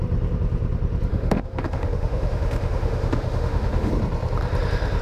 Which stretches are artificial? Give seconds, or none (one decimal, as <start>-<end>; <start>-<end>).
1.1-3.9